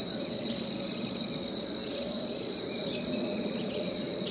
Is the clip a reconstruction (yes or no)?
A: yes